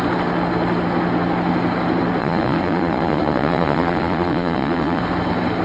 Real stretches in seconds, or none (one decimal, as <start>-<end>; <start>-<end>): 0.0-2.2; 5.0-5.6